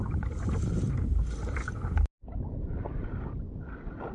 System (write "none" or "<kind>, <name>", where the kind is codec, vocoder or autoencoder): none